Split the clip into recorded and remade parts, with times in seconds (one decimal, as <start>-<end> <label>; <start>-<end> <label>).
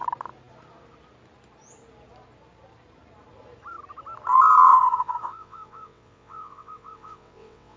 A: 0.0-4.6 recorded; 4.6-7.8 remade